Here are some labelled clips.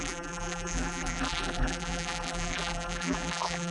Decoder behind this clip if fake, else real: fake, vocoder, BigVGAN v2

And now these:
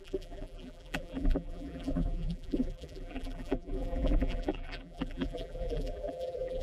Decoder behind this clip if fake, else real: fake, vocoder, BigVGAN v2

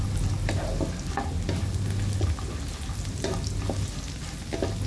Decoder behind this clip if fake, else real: real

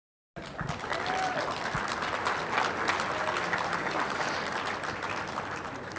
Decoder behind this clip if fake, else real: real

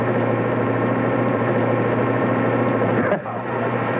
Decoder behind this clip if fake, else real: fake, vocoder, BigVGAN v2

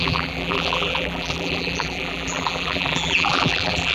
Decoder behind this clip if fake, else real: fake, vocoder, BigVGAN v2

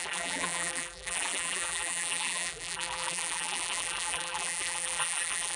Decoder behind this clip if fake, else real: fake, vocoder, BigVGAN v2